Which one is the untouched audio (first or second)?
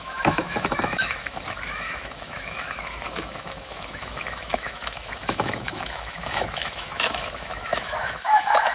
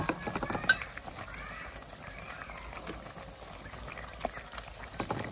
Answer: second